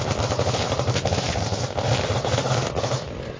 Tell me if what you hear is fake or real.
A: real